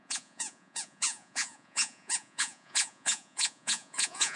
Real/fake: fake